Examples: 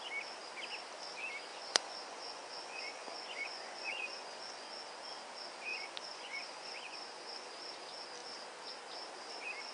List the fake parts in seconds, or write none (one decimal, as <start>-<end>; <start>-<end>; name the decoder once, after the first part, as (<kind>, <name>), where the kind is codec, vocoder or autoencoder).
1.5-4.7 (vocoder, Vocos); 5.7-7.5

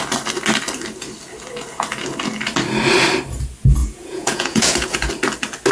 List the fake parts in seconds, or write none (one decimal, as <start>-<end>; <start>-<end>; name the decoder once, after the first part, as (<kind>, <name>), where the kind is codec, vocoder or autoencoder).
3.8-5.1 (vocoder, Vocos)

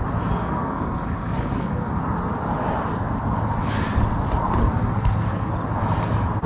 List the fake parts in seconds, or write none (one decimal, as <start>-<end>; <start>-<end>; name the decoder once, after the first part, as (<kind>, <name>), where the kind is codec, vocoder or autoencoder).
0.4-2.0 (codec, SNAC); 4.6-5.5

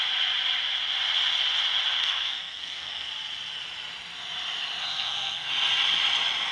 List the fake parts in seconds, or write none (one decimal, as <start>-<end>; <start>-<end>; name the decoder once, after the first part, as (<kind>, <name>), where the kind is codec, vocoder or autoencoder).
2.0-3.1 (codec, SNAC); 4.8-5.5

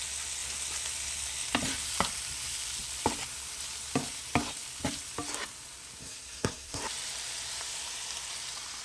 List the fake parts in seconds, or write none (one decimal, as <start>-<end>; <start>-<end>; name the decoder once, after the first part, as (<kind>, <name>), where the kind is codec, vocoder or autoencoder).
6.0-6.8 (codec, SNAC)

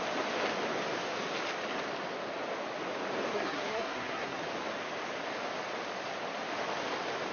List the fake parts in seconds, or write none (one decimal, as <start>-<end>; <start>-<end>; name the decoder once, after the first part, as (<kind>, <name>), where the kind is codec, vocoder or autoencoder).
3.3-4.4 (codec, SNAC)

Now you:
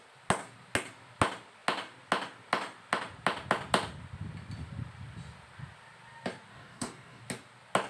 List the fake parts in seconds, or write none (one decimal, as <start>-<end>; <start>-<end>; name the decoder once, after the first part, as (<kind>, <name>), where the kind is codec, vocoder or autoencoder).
6.5-7.2 (codec, DAC)

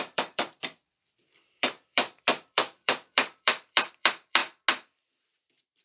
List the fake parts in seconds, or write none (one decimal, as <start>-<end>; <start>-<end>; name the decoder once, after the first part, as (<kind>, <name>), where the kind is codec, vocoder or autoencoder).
0.0-4.4 (vocoder, BigVGAN v2)